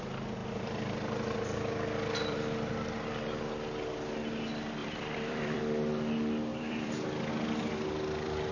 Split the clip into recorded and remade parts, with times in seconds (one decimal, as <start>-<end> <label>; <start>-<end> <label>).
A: 0.0-0.4 recorded; 0.4-2.7 remade; 2.7-4.8 recorded; 4.8-5.6 remade; 5.6-6.5 recorded; 6.5-7.3 remade; 7.3-8.5 recorded